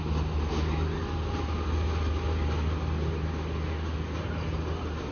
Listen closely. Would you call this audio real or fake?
real